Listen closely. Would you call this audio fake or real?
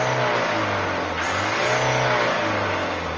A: real